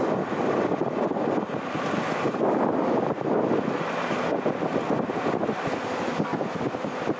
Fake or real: real